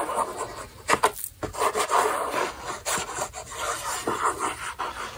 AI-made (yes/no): no